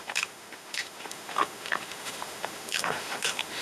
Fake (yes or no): yes